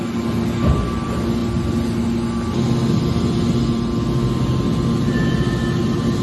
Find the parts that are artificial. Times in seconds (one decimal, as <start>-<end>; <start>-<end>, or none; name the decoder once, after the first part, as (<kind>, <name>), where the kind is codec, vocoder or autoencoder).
none